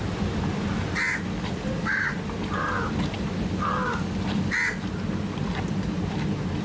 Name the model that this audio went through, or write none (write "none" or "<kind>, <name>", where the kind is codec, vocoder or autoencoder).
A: none